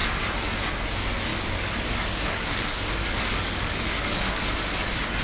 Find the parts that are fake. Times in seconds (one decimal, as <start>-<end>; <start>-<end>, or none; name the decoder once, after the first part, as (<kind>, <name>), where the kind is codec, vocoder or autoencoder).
1.3-4.4 (codec, DAC)